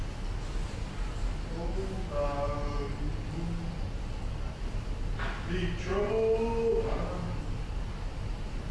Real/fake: real